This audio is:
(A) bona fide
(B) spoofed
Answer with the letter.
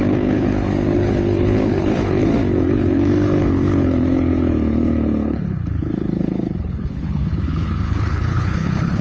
B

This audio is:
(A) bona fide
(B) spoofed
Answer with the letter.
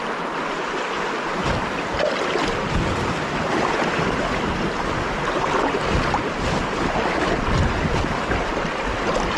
A